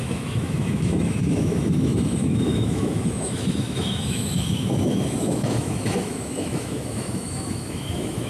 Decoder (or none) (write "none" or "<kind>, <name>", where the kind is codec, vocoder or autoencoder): autoencoder, DAC-VAE